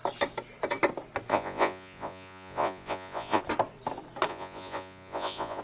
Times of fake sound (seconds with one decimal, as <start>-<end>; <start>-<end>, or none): 1.3-3.4; 4.3-5.6